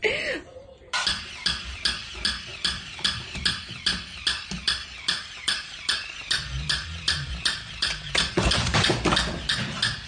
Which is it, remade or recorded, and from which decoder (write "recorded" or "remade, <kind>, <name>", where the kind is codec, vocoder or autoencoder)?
remade, vocoder, BigVGAN v2